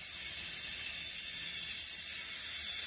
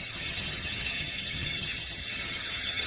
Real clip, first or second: first